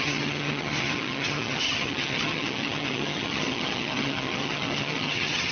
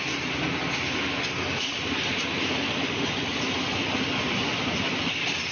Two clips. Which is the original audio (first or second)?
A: second